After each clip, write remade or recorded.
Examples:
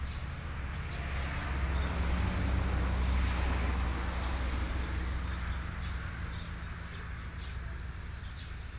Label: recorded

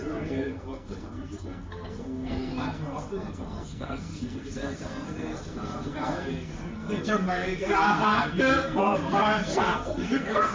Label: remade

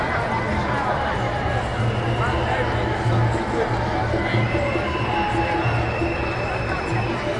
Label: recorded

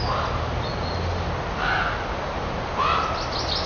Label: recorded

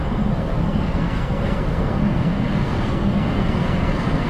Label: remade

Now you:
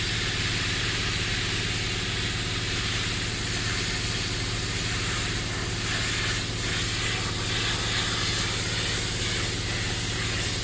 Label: recorded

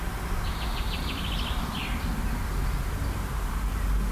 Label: recorded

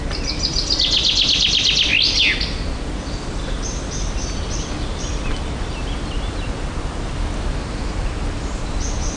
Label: recorded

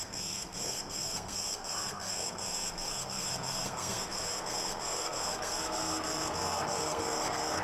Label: remade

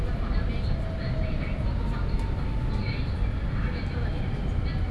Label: recorded